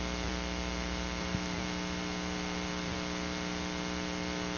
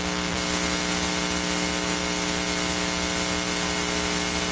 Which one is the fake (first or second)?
first